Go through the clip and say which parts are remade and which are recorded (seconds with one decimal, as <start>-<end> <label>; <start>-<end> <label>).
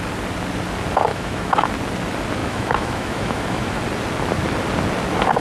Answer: 0.0-1.1 recorded; 1.1-1.6 remade; 1.6-2.4 recorded; 2.4-3.8 remade; 3.8-5.4 recorded